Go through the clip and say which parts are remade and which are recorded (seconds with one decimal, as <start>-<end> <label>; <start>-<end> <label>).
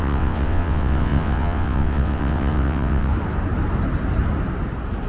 0.0-3.1 remade; 3.1-5.1 recorded